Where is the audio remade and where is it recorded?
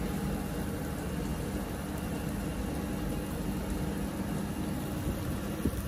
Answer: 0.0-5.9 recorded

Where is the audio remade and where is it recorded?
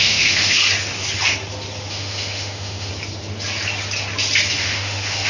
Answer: 0.0-0.6 remade; 0.6-1.9 recorded; 1.9-2.9 remade; 2.9-4.5 recorded; 4.5-5.3 remade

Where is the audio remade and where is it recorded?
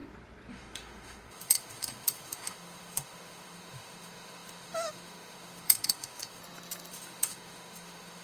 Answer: 0.0-0.5 recorded; 0.5-6.4 remade; 6.4-6.9 recorded; 6.9-8.2 remade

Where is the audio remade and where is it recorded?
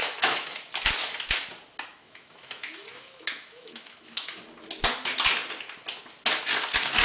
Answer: 0.0-0.9 remade; 0.9-1.9 recorded; 1.9-4.4 remade; 4.4-7.0 recorded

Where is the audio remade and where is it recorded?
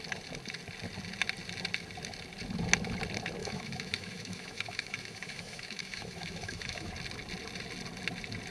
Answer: 0.0-3.4 recorded; 3.4-6.9 remade; 6.9-8.5 recorded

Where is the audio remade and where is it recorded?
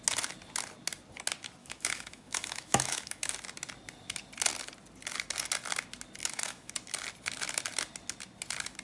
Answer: 0.0-1.6 recorded; 1.6-3.3 remade; 3.3-6.2 recorded; 6.2-6.7 remade; 6.7-8.8 recorded